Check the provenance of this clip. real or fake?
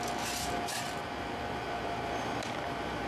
fake